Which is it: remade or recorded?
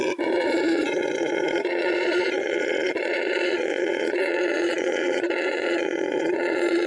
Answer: remade